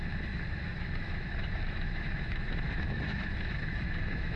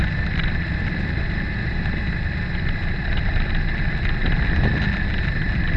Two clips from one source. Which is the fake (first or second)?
first